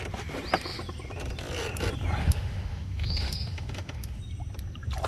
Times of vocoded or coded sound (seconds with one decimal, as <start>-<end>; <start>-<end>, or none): 2.2-4.2